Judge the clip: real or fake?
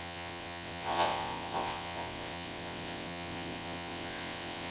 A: fake